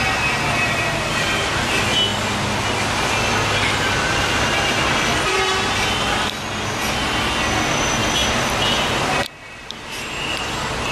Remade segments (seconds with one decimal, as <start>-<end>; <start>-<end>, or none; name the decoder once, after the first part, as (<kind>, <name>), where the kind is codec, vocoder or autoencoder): 0.0-2.1 (vocoder, BigVGAN v2); 4.8-5.3; 8.7-10.9